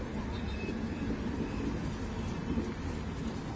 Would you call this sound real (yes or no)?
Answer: yes